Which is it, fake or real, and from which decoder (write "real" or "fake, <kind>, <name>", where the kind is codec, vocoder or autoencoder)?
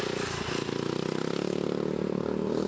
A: real